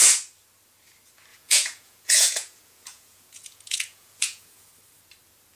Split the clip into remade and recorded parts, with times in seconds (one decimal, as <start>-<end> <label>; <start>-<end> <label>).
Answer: 0.0-1.3 recorded; 1.3-4.7 remade; 4.7-5.6 recorded